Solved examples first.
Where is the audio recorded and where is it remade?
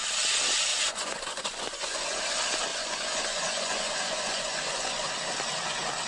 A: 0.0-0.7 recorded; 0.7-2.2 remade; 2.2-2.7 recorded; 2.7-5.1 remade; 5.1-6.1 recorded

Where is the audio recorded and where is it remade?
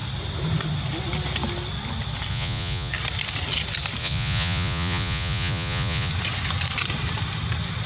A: 0.0-2.3 recorded; 2.3-2.9 remade; 2.9-4.0 recorded; 4.0-6.1 remade; 6.1-7.9 recorded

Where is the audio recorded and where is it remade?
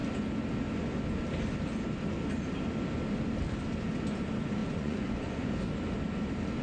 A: 0.0-4.6 recorded; 4.6-5.5 remade; 5.5-6.6 recorded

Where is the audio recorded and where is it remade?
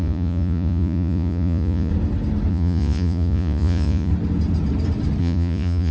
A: 0.0-1.9 remade; 1.9-2.5 recorded; 2.5-4.1 remade; 4.1-5.2 recorded; 5.2-5.9 remade